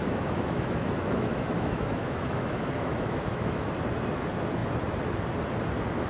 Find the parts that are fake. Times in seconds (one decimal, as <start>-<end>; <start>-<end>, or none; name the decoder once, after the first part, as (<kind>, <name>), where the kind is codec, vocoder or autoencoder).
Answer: 0.0-3.7 (autoencoder, DAC-VAE)